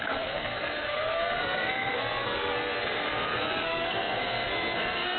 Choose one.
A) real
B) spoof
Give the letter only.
B